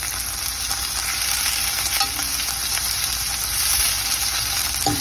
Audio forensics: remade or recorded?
recorded